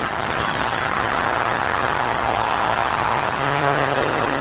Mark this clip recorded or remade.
remade